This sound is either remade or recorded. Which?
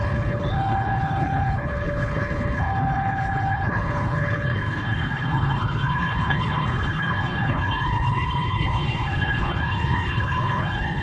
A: remade